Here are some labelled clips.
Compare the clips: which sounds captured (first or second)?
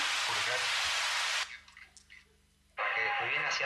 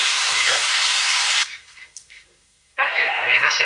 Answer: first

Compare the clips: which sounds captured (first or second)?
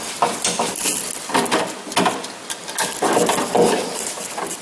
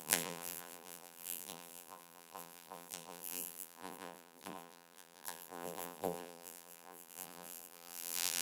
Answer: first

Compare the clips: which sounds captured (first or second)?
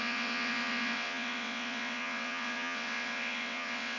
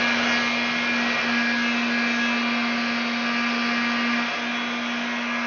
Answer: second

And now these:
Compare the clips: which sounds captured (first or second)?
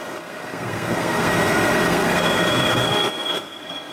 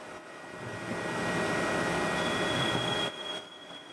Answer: second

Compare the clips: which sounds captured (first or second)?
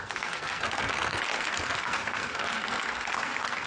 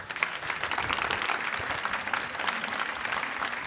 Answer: second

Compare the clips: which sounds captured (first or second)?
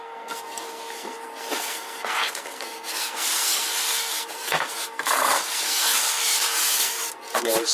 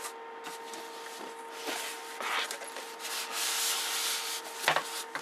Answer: second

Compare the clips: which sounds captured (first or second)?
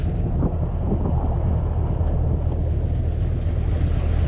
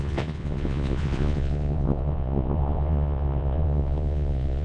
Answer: first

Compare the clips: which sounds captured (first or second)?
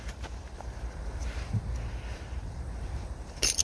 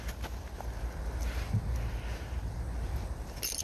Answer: second